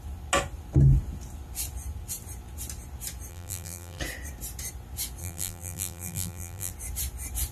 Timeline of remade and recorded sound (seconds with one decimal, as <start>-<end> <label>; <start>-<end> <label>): 0.0-3.3 recorded; 3.3-4.0 remade; 4.0-5.2 recorded; 5.2-6.7 remade; 6.7-7.5 recorded